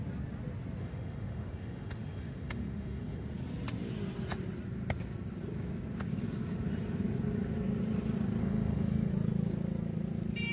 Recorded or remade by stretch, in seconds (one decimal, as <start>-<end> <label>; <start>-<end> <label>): 0.0-0.8 recorded; 0.8-3.3 remade; 3.3-8.4 recorded; 8.4-9.1 remade; 9.1-10.5 recorded

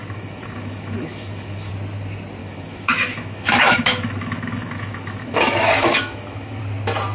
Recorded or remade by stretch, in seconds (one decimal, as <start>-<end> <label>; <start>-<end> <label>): 0.0-1.7 remade; 1.7-2.4 recorded; 2.4-6.6 remade; 6.6-7.1 recorded

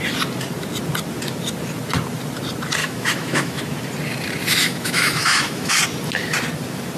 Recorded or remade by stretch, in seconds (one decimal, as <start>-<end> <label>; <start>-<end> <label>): 0.0-2.8 recorded; 2.8-3.6 remade; 3.6-4.6 recorded; 4.6-5.8 remade; 5.8-7.0 recorded